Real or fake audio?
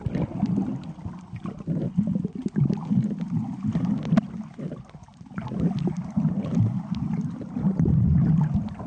real